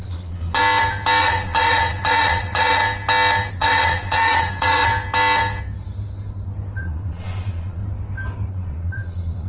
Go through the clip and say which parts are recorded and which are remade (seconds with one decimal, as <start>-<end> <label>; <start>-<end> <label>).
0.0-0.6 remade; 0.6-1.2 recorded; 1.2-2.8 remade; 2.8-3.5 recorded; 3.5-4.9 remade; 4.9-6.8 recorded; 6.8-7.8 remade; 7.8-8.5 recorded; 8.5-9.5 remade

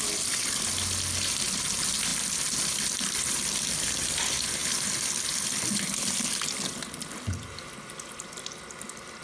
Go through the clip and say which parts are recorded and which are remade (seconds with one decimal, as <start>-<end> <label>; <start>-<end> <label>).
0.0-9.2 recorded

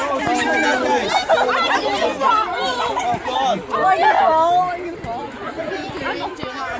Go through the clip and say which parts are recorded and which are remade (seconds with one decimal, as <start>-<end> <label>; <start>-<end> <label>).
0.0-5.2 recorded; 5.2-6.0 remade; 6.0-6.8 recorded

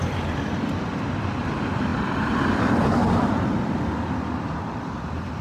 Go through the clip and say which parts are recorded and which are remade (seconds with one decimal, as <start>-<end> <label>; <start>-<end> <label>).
0.0-5.4 remade

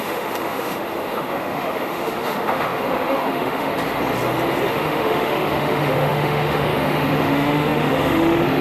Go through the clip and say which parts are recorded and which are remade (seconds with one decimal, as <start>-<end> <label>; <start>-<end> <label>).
0.0-3.7 remade; 3.7-4.7 recorded; 4.7-8.6 remade

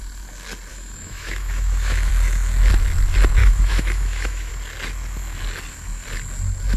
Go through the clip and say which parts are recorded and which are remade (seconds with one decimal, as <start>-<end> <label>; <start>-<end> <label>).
0.0-0.7 recorded; 0.7-2.1 remade; 2.1-3.4 recorded; 3.4-4.5 remade; 4.5-6.8 recorded

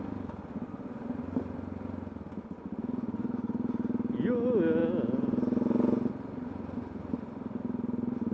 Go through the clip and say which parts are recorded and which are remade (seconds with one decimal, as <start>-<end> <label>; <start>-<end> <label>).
0.0-8.3 recorded

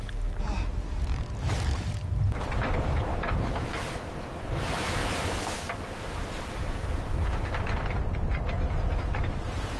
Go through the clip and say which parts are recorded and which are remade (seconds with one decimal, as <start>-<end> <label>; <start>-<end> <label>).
0.0-4.1 remade; 4.1-9.8 recorded